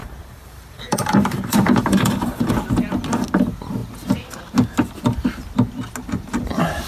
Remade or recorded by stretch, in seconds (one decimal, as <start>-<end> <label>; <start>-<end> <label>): 0.0-2.5 remade; 2.5-6.9 recorded

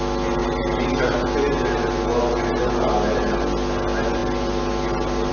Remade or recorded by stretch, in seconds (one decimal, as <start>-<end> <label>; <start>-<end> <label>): 0.0-5.3 recorded